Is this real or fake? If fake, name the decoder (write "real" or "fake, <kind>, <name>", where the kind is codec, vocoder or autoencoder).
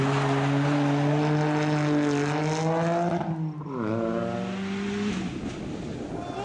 real